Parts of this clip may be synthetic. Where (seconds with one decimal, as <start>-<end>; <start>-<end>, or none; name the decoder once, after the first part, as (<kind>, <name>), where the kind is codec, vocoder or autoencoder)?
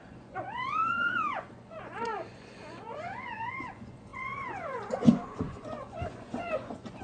0.0-7.0 (vocoder, Vocos)